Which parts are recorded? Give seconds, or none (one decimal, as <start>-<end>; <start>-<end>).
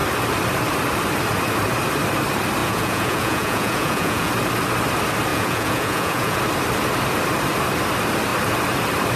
0.0-2.6; 4.3-5.3; 6.4-9.2